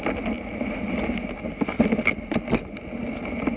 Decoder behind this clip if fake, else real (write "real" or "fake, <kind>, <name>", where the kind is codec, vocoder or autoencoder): real